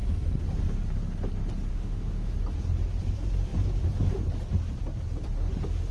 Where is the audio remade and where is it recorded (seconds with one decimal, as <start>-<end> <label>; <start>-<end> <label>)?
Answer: 0.0-1.7 recorded; 1.7-2.3 remade; 2.3-5.9 recorded